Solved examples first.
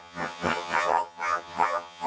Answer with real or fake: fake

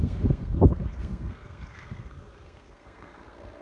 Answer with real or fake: fake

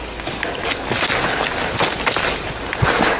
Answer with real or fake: real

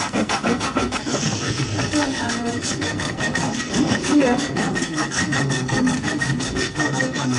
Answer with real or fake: fake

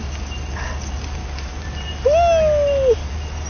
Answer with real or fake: real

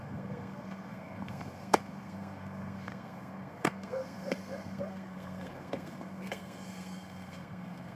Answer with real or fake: fake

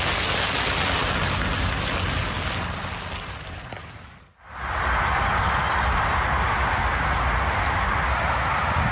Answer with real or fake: real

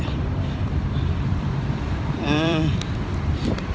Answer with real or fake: fake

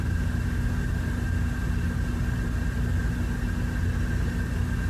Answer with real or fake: real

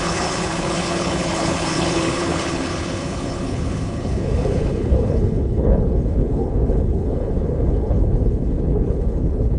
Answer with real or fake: fake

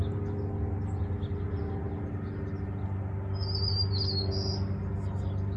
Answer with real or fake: real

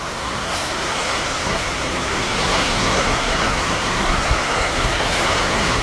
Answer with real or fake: fake